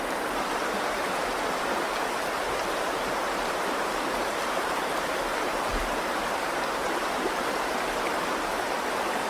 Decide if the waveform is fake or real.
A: fake